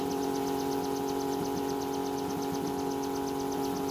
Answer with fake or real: real